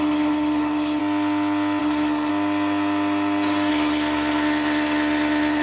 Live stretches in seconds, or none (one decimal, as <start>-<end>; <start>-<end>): 1.0-1.8; 2.3-3.7